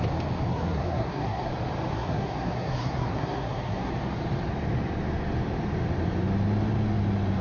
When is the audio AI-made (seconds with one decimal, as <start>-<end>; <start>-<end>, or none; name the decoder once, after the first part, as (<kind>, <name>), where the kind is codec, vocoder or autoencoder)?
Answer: 0.5-1.5 (codec, SNAC); 1.9-3.9